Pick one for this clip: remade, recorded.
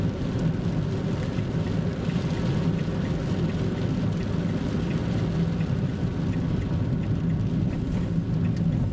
recorded